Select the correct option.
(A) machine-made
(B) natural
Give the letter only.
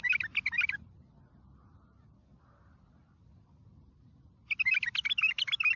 B